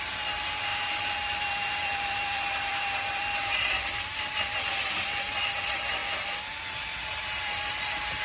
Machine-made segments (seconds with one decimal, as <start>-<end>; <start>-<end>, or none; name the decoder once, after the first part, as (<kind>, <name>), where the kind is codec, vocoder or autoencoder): 0.0-6.0 (vocoder, BigVGAN v2); 7.0-8.2